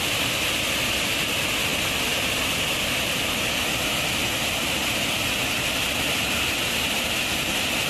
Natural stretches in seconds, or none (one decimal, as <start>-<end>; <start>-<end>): 0.0-7.9